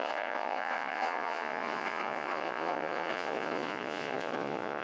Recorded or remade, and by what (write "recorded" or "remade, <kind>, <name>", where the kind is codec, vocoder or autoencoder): remade, vocoder, Vocos